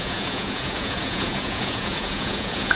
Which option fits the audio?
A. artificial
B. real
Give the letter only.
A